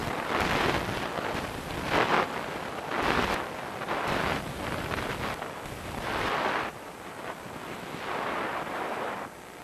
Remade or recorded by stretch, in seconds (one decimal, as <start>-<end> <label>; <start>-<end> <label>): 0.0-9.6 recorded